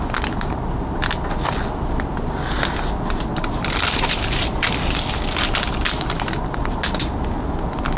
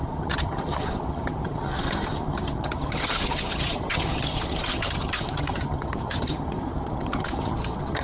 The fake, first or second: second